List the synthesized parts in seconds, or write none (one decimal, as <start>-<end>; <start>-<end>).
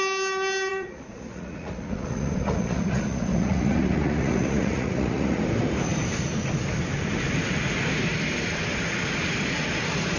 0.7-5.4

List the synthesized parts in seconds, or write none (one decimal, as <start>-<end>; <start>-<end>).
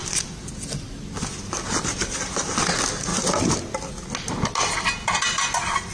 none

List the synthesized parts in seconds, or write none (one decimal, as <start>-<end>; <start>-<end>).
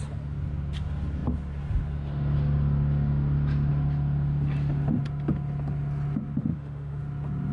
6.4-7.0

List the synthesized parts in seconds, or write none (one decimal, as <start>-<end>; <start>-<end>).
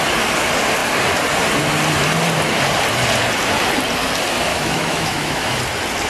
4.5-5.6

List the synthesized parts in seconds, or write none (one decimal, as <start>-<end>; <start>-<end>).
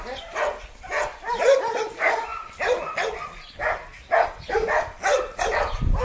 none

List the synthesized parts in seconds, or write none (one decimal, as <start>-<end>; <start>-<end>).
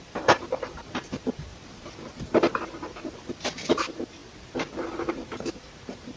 0.0-1.5; 3.7-4.2; 5.1-6.2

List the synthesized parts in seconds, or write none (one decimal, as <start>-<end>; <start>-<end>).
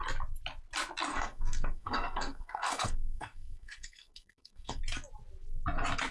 1.1-4.8